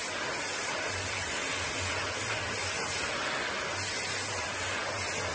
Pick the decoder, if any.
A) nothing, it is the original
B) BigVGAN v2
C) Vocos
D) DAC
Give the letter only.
A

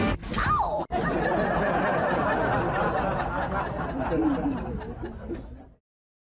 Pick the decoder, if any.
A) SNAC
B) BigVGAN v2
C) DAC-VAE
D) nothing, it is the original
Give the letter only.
D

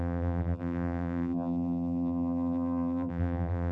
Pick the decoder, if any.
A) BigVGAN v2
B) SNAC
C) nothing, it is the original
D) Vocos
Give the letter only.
A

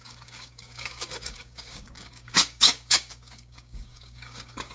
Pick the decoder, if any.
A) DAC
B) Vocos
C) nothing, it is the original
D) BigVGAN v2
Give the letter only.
A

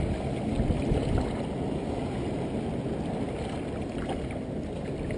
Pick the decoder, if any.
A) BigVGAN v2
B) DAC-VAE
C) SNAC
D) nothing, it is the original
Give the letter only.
D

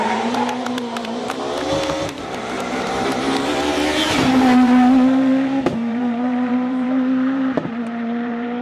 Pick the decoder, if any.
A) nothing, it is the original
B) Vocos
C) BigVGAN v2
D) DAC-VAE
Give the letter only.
C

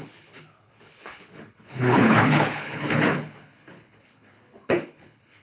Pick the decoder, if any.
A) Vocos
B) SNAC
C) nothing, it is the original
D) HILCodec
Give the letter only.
D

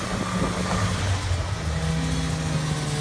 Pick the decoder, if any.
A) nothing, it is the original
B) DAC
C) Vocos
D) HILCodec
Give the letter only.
A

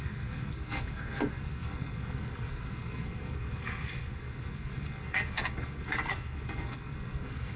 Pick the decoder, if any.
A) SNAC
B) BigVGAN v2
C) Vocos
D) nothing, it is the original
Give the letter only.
A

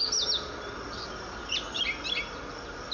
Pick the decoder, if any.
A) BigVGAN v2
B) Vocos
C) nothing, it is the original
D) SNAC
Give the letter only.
C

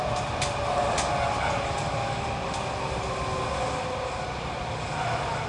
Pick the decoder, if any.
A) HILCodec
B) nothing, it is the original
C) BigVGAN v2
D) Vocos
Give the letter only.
B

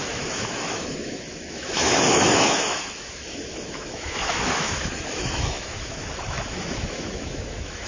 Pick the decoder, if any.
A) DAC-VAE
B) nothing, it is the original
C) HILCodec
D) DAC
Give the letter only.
A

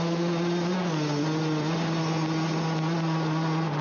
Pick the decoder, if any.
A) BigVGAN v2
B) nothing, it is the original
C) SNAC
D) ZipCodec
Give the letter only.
B